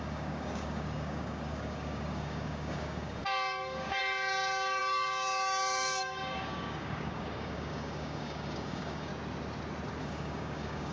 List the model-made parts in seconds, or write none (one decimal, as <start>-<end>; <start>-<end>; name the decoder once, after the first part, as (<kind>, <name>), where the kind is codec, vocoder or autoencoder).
0.0-9.1 (codec, DAC); 10.0-10.9